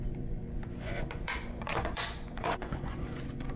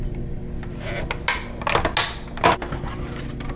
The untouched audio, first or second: second